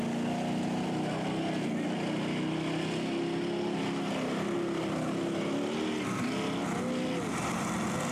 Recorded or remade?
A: recorded